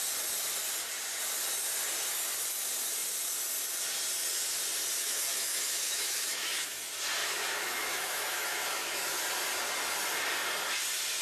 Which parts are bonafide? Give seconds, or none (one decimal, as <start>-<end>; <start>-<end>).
0.0-5.0; 6.8-7.2; 9.2-11.2